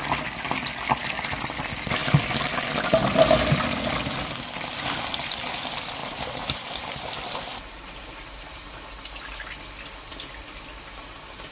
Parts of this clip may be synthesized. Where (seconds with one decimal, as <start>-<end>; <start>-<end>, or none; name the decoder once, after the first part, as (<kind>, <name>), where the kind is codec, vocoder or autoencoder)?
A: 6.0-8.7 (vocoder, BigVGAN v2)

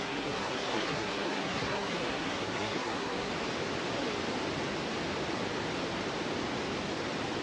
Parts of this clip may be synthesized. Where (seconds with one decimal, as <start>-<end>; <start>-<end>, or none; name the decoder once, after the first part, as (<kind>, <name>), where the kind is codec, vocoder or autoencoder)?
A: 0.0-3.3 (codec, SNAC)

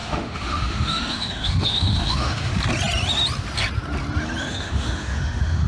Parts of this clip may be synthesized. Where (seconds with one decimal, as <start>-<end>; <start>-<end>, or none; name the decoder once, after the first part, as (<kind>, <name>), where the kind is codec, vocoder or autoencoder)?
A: 0.0-2.5 (autoencoder, DAC-VAE); 4.4-5.7

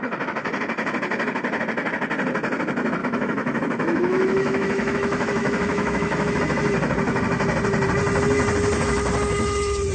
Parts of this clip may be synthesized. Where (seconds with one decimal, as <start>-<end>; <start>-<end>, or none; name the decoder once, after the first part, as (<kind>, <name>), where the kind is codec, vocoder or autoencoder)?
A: 3.0-6.4 (autoencoder, DAC-VAE)